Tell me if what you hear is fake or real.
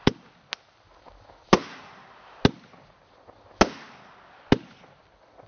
real